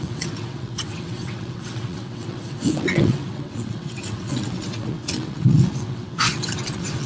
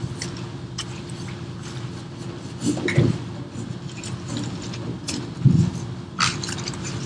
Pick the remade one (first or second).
first